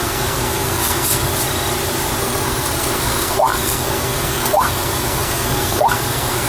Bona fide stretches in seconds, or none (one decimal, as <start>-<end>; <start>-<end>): 1.3-2.2

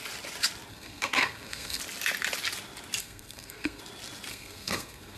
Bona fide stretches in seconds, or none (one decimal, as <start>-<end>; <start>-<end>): 0.0-0.7; 1.8-3.0; 3.8-4.3

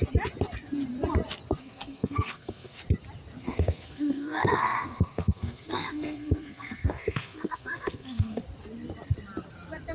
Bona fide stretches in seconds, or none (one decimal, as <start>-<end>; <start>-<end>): 0.0-1.6; 2.8-3.4; 8.4-9.9

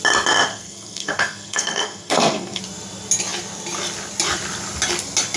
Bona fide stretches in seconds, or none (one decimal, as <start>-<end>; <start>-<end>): 0.0-0.5; 2.6-5.4

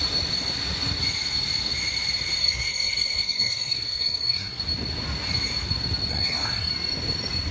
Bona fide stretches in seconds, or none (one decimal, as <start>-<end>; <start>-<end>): 0.0-2.4; 4.6-6.1; 6.7-7.5